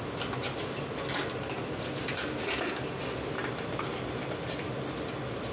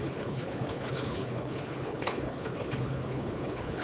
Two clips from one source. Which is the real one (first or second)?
first